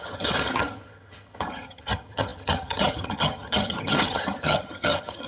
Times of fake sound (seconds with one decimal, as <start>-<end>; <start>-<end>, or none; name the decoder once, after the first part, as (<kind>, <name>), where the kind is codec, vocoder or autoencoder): 0.0-5.3 (vocoder, HiFi-GAN)